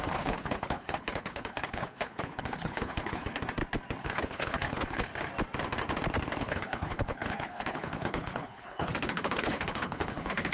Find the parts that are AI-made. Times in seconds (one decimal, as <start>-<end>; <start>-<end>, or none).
0.0-3.4; 4.0-5.1; 6.4-10.5